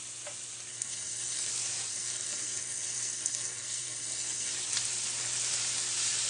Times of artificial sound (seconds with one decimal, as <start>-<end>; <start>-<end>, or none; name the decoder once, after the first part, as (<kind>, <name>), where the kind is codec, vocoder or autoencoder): 0.7-1.5 (codec, SNAC); 1.9-4.5

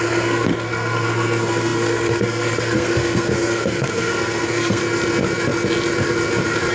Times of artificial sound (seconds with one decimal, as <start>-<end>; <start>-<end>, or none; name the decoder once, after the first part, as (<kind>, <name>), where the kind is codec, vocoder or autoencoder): 0.0-4.8 (codec, SNAC)

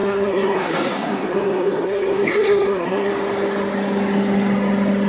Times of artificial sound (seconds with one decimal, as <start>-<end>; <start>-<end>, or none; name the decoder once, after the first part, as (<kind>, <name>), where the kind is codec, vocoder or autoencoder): 0.0-3.1 (codec, SNAC)

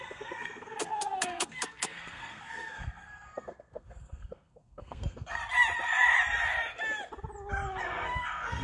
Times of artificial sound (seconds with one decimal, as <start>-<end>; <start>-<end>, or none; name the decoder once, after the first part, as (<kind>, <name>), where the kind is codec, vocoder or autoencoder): 0.0-5.4 (codec, SNAC); 7.8-8.6